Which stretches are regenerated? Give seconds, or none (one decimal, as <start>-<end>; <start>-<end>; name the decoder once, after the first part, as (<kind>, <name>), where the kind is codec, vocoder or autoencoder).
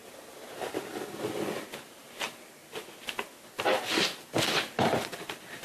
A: none